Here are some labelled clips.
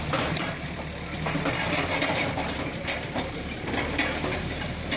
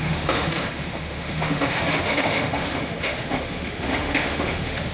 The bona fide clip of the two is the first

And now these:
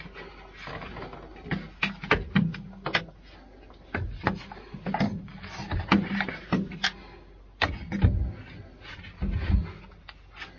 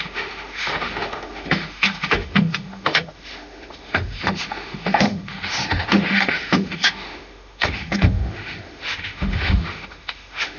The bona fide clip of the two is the first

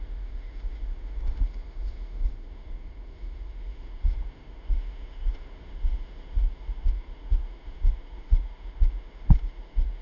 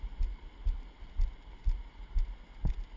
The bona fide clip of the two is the second